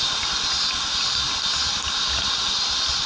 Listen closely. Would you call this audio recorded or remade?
recorded